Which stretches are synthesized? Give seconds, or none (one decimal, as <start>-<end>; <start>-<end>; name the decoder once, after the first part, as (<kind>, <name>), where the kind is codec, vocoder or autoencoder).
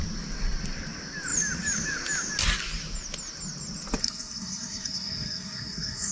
4.0-6.1 (codec, SNAC)